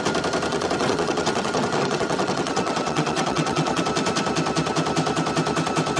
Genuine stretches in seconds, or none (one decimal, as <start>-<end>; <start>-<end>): 0.0-0.5; 3.8-6.0